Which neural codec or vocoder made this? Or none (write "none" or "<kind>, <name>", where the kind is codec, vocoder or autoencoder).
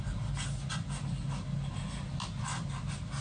none